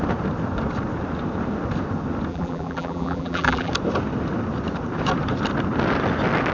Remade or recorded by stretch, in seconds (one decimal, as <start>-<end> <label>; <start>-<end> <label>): 0.0-2.3 recorded; 2.3-3.7 remade; 3.7-6.5 recorded